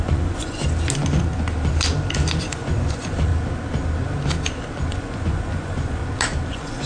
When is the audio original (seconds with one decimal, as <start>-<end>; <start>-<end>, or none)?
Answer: 0.6-2.4; 3.3-4.9; 6.0-6.5